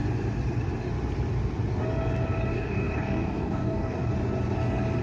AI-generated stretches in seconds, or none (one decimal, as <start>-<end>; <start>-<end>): 2.5-4.1